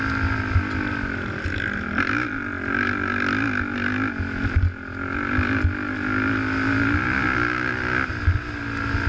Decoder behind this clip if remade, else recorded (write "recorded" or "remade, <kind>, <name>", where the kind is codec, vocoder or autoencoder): recorded